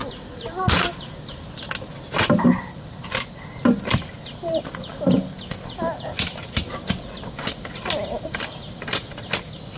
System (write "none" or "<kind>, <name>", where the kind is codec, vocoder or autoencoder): none